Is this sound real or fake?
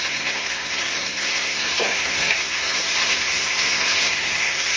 fake